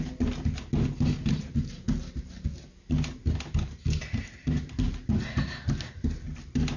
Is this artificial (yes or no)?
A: no